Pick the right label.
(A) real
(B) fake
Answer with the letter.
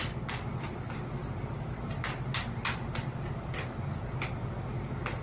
A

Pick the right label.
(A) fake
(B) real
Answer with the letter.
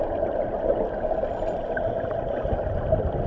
B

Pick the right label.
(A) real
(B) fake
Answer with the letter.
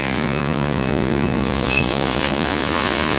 B